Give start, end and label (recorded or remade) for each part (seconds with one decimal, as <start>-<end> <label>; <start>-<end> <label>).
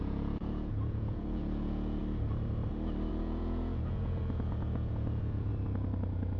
0.0-2.0 remade; 2.0-3.1 recorded; 3.1-5.5 remade; 5.5-6.4 recorded